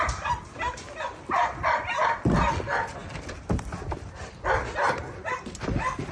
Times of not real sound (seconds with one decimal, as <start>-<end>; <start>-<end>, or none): none